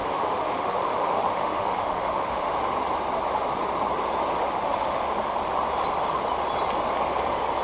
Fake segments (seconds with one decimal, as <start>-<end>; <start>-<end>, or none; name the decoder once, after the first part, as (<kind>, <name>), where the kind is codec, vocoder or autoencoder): 0.0-2.5 (autoencoder, DAC-VAE); 4.5-5.0